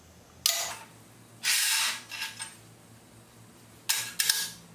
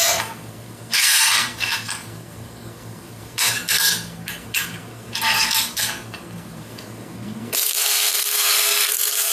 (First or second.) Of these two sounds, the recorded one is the first